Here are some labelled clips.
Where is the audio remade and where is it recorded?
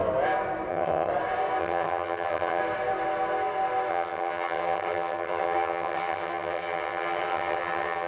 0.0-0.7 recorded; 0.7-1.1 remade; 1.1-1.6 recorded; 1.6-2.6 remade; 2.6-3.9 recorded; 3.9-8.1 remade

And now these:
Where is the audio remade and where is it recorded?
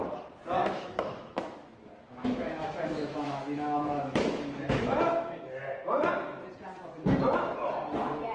0.0-0.6 recorded; 0.6-5.6 remade; 5.6-8.3 recorded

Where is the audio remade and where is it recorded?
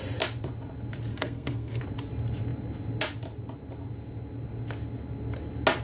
0.0-1.1 recorded; 1.1-1.8 remade; 1.8-5.8 recorded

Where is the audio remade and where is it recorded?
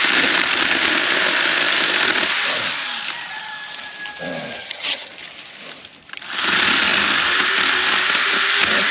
0.0-4.6 recorded; 4.6-5.1 remade; 5.1-8.9 recorded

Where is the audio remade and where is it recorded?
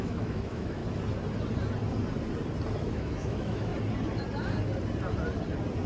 0.0-0.8 remade; 0.8-2.8 recorded; 2.8-3.7 remade; 3.7-5.9 recorded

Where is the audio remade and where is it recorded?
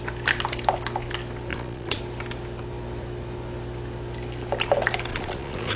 0.0-1.5 recorded; 1.5-2.0 remade; 2.0-5.1 recorded; 5.1-5.8 remade